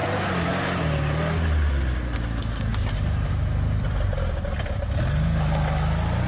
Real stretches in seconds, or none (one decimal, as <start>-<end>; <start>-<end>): 0.0-2.7; 4.5-6.3